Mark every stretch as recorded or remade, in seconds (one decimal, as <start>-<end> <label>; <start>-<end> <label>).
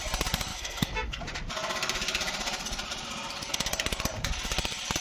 0.0-0.5 recorded; 0.5-1.2 remade; 1.2-5.0 recorded